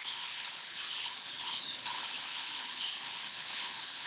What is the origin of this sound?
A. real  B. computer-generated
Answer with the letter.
B